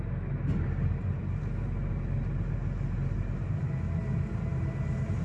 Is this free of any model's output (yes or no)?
yes